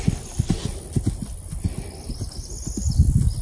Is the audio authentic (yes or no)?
yes